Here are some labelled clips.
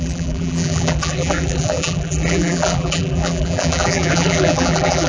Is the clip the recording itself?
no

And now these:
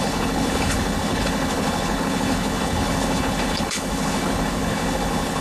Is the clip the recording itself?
no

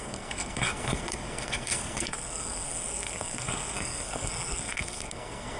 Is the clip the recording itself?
no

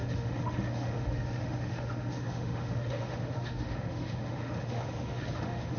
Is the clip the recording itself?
no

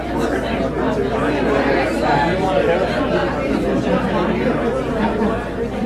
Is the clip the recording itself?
yes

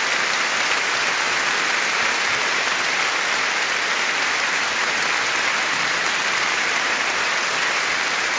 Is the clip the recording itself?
yes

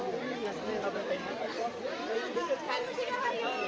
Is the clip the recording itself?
yes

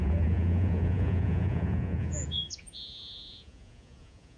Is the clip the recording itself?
no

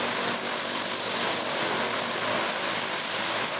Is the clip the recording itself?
yes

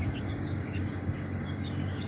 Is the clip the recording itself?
no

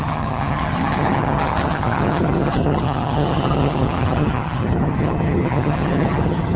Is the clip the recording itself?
no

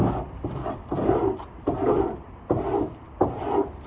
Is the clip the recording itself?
no